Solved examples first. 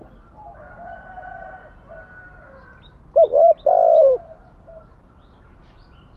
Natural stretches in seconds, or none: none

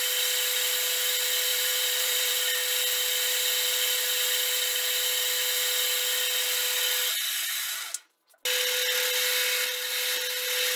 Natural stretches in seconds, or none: 0.0-1.5; 2.3-10.8

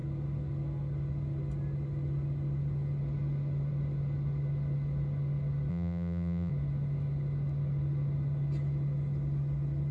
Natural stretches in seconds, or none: 0.0-5.7; 6.5-9.9